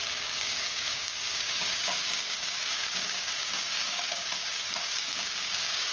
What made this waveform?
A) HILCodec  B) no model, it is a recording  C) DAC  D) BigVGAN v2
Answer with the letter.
C